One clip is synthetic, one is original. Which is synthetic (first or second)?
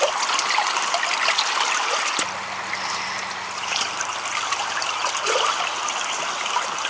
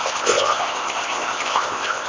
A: second